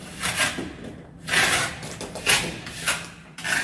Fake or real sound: fake